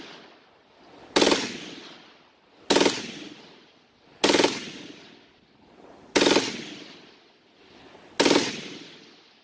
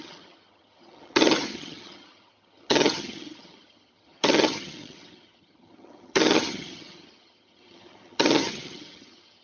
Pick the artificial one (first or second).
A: second